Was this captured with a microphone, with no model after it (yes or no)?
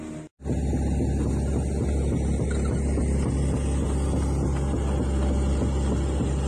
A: yes